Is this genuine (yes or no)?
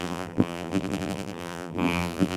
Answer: no